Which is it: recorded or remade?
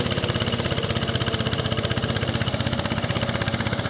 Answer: remade